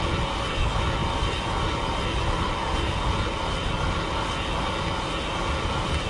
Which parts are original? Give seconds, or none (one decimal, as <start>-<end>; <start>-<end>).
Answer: 0.0-6.1